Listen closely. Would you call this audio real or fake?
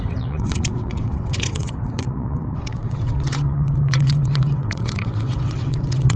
fake